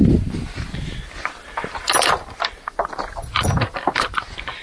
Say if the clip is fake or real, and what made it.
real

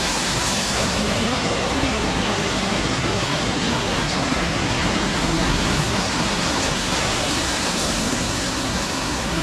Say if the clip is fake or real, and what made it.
fake, codec, SNAC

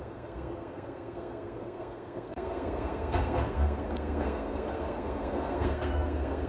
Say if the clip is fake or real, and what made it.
fake, codec, SNAC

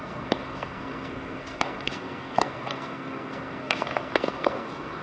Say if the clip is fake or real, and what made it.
fake, codec, SNAC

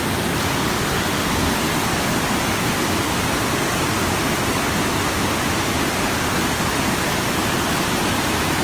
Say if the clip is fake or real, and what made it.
real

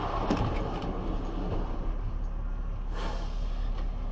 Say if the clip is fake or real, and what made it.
real